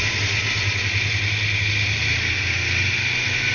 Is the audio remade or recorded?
recorded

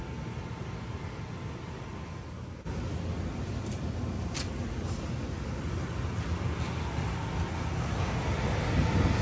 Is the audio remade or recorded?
recorded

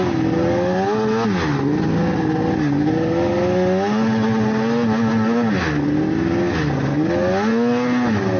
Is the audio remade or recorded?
recorded